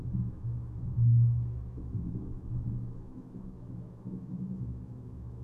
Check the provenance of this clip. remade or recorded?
remade